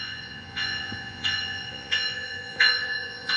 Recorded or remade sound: remade